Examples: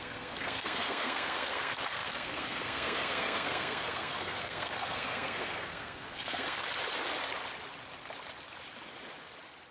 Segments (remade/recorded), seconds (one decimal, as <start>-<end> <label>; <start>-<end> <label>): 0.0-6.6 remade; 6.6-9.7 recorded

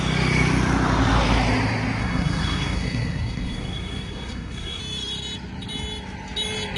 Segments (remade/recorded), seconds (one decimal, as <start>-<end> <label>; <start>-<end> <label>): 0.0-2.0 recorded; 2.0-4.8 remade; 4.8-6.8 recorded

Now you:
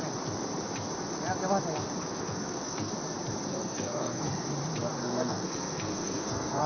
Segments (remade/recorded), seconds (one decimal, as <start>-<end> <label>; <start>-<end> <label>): 0.0-2.0 recorded; 2.0-2.9 remade; 2.9-3.5 recorded; 3.5-4.2 remade; 4.2-5.0 recorded; 5.0-6.7 remade